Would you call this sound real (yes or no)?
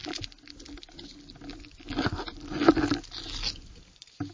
yes